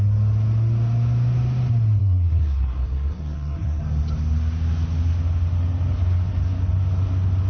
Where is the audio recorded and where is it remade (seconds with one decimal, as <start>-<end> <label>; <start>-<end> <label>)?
0.0-2.0 recorded; 2.0-3.8 remade; 3.8-7.5 recorded